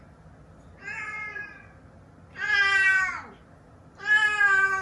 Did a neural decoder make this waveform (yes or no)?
no